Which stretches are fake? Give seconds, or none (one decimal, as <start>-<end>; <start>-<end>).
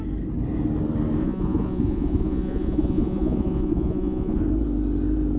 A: 1.2-4.4